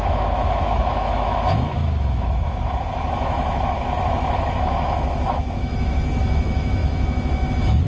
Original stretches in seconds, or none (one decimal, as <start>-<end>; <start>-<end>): none